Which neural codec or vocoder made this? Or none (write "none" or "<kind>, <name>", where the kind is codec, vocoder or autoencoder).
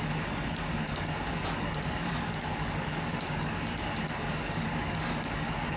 codec, DAC